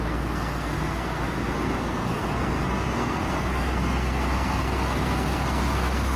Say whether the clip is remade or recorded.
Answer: remade